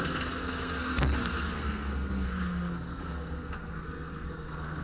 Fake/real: fake